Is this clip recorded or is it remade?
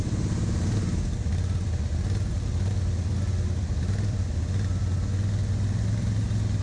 recorded